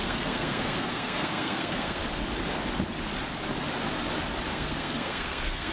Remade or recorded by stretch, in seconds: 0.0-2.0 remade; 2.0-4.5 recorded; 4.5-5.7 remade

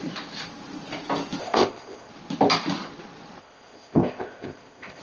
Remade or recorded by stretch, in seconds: 0.0-1.4 recorded; 1.4-2.1 remade; 2.1-3.4 recorded; 3.4-5.0 remade

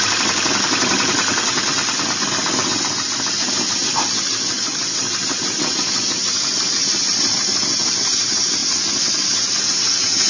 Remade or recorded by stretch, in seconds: 0.0-10.3 recorded